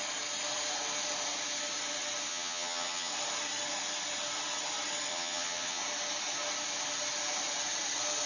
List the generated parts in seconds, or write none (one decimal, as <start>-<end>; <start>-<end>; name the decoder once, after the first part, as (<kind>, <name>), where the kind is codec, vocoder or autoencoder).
2.3-3.1 (vocoder, HiFi-GAN); 5.1-5.8